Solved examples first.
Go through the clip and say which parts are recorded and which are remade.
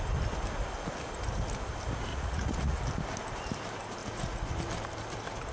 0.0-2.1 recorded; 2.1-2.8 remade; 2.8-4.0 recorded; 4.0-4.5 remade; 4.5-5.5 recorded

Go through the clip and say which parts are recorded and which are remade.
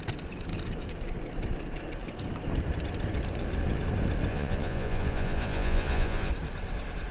0.0-4.3 recorded; 4.3-6.3 remade; 6.3-7.1 recorded